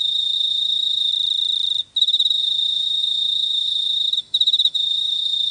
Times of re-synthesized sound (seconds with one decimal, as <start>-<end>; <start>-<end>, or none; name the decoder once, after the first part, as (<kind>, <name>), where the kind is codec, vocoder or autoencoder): 0.0-1.1 (autoencoder, DAC-VAE); 2.0-5.5